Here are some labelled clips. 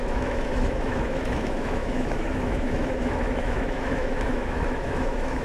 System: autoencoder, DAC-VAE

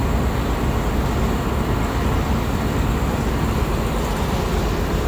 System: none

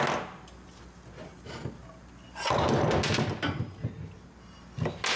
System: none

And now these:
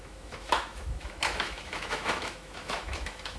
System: autoencoder, DAC-VAE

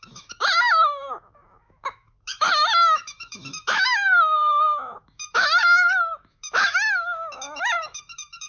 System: autoencoder, DAC-VAE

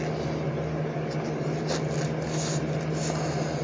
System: none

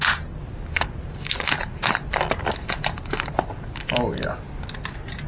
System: none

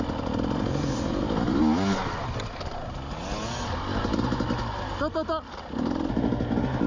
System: none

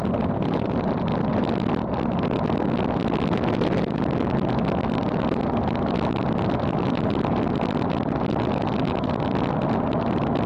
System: none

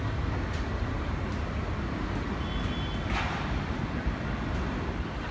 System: none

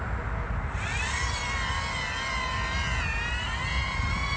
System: none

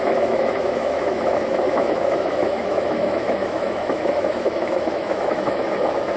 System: autoencoder, DAC-VAE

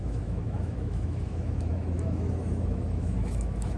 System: autoencoder, DAC-VAE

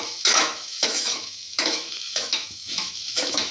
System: autoencoder, DAC-VAE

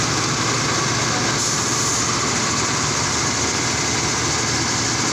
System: none